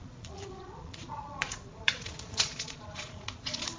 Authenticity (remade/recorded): remade